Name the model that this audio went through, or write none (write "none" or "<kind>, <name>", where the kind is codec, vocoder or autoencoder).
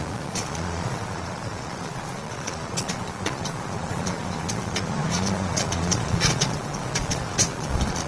vocoder, Vocos